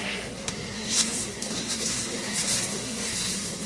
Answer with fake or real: fake